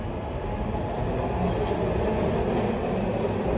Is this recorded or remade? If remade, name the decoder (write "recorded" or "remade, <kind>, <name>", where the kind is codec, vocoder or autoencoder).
recorded